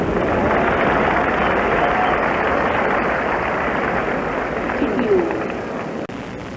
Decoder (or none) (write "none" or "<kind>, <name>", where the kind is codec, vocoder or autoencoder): none